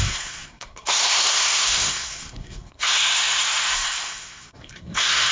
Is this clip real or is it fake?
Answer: fake